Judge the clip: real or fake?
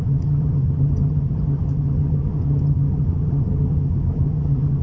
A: fake